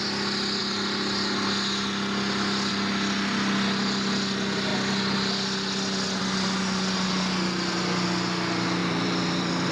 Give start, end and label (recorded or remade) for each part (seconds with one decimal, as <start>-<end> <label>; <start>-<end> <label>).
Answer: 0.0-8.8 recorded; 8.8-9.7 remade